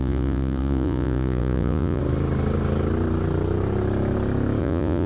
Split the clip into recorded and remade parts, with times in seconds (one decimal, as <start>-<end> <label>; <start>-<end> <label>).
0.0-2.0 remade; 2.0-4.6 recorded; 4.6-5.1 remade